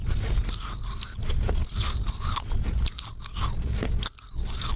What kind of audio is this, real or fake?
real